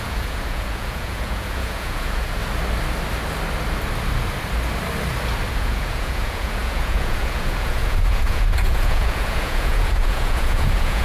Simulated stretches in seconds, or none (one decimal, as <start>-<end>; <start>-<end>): 0.0-2.4; 5.5-11.0